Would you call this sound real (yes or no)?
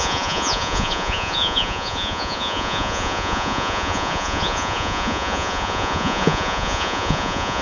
no